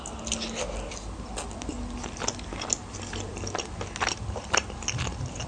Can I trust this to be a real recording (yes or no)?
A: yes